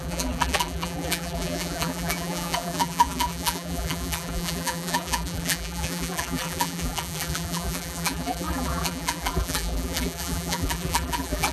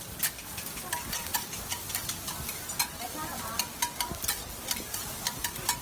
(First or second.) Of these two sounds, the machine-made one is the first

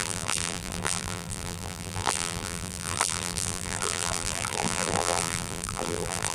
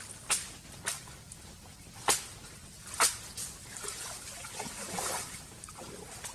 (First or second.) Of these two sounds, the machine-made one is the first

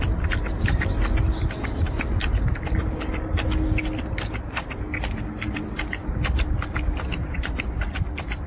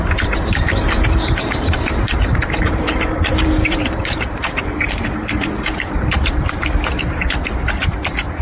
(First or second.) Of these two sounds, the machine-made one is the second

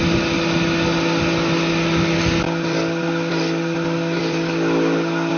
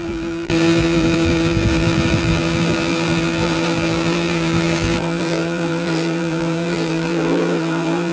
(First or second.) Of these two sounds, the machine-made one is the second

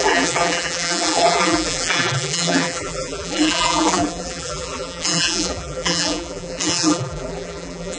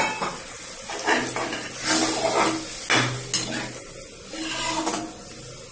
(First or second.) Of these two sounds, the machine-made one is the first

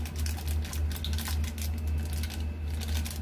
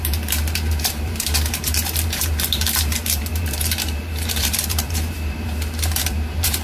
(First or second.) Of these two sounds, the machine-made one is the second